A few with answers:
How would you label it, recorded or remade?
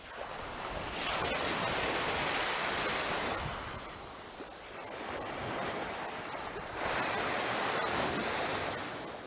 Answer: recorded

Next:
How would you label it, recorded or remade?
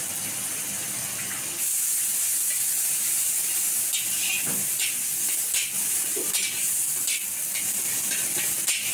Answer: recorded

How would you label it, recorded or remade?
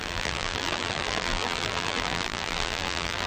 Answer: remade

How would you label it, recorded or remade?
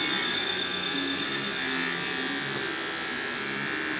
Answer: recorded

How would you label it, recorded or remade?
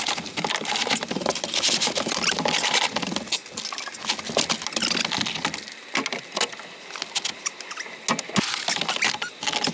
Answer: recorded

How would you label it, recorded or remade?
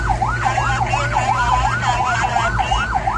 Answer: recorded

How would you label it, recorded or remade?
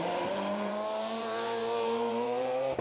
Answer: remade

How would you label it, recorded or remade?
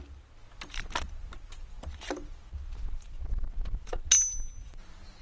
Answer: recorded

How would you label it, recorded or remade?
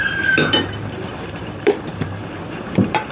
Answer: remade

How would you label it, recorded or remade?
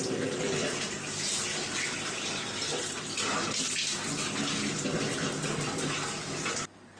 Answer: recorded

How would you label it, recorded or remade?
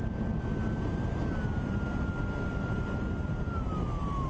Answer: recorded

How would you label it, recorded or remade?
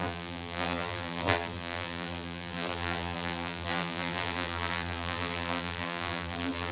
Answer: remade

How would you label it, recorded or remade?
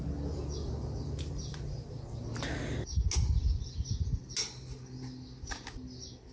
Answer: recorded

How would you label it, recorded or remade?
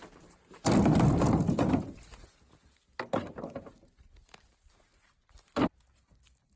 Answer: recorded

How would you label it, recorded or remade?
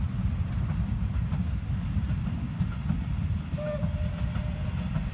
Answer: recorded